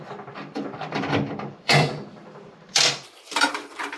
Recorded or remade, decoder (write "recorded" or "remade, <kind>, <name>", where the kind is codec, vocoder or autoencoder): remade, vocoder, BigVGAN v2